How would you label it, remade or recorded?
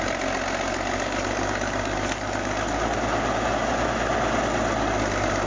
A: recorded